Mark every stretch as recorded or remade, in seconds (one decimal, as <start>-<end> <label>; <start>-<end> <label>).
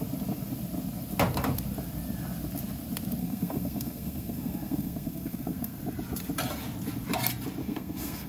0.0-3.2 recorded; 3.2-5.8 remade; 5.8-7.6 recorded; 7.6-8.3 remade